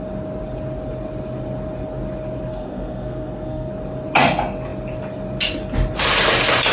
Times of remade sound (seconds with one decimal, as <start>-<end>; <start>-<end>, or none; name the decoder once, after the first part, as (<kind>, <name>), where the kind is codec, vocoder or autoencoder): 2.5-3.7 (codec, SNAC)

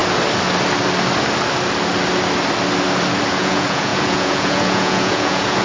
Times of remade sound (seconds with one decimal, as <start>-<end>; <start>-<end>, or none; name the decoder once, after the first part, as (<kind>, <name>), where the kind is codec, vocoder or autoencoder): 3.3-5.6 (vocoder, Vocos)

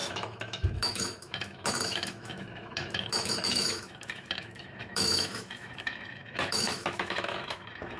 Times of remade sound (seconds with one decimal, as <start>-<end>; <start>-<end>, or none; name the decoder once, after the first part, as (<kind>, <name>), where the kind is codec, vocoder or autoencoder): 0.0-8.0 (autoencoder, DAC-VAE)

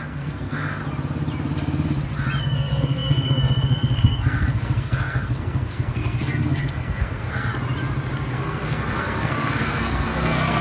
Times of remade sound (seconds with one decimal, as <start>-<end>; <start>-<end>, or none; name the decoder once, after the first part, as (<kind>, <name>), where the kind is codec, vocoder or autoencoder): 0.0-0.8 (codec, SNAC); 2.4-7.5; 8.3-10.6